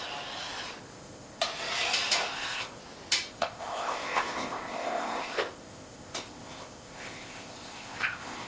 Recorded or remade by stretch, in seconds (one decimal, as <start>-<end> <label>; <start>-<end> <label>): 0.0-0.8 recorded; 0.8-1.4 remade; 1.4-2.3 recorded; 2.3-2.8 remade; 2.8-3.3 recorded; 3.3-8.5 remade